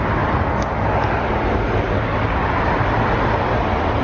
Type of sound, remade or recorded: recorded